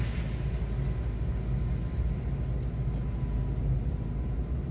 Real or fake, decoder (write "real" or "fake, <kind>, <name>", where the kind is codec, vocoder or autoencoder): real